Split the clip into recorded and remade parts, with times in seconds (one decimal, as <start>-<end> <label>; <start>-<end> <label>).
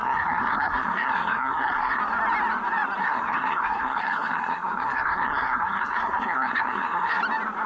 0.0-2.0 remade; 2.0-3.0 recorded; 3.0-7.2 remade; 7.2-7.7 recorded